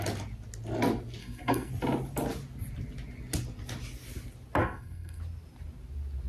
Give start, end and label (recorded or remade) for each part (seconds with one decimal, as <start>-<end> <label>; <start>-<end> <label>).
0.0-1.2 recorded; 1.2-1.7 remade; 1.7-4.6 recorded; 4.6-5.2 remade; 5.2-6.3 recorded